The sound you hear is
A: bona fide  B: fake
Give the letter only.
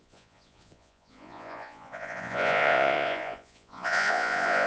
B